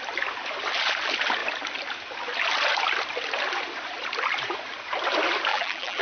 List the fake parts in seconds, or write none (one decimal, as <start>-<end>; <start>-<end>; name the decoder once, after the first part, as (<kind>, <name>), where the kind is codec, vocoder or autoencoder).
5.5-6.0 (vocoder, BigVGAN v2)